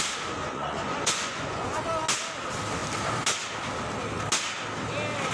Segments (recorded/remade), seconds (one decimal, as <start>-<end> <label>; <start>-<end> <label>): 0.0-0.4 recorded; 0.4-1.8 remade; 1.8-5.3 recorded